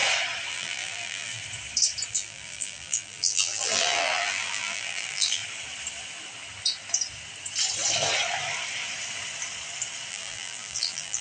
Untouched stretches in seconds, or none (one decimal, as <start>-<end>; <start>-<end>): 0.0-0.5; 1.4-2.1; 5.4-10.1

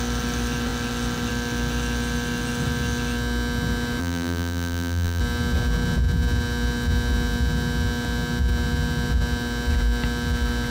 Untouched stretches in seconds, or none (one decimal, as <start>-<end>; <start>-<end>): 0.0-4.0; 5.2-10.7

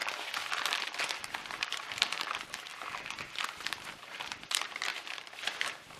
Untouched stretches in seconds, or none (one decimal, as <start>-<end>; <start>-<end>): 0.0-0.8; 2.7-3.7

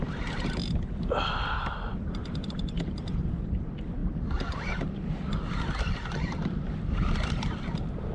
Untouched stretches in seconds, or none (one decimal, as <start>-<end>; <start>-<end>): 0.0-8.1

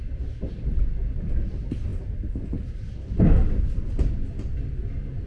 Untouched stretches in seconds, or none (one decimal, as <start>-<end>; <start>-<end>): 0.0-5.3

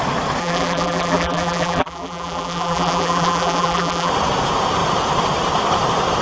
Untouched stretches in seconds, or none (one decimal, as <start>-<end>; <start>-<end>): 0.0-0.4; 4.1-6.2